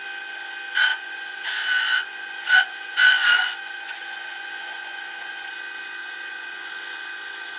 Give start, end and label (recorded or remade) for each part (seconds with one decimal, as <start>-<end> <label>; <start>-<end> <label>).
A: 0.0-0.9 recorded; 0.9-5.5 remade; 5.5-6.0 recorded; 6.0-6.7 remade; 6.7-7.6 recorded